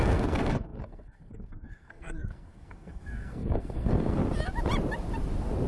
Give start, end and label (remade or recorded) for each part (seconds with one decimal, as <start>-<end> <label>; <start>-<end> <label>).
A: 0.0-4.2 remade; 4.2-5.7 recorded